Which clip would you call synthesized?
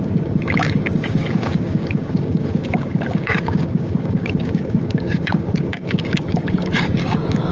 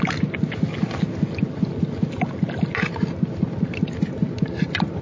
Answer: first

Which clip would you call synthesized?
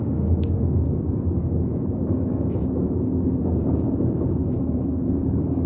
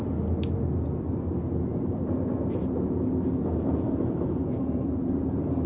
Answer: first